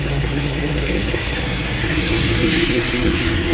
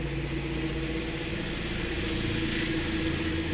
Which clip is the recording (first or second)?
second